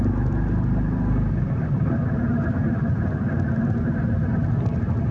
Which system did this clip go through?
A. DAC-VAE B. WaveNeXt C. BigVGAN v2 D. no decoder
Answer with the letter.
D